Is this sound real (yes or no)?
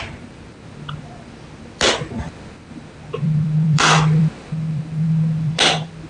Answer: no